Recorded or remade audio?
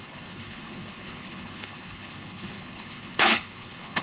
remade